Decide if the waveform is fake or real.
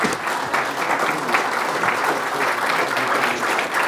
real